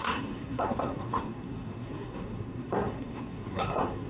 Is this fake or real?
fake